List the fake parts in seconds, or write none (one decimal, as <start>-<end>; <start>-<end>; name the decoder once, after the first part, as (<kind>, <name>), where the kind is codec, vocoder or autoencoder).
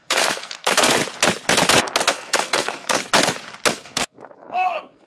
0.0-1.0 (codec, SNAC); 2.1-3.0; 3.7-5.1